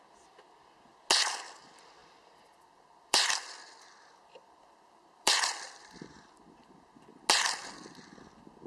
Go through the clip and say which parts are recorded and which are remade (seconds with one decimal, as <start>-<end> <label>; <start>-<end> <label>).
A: 0.0-2.0 recorded; 2.0-6.4 remade; 6.4-8.7 recorded